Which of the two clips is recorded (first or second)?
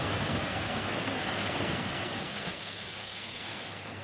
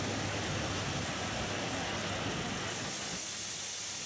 second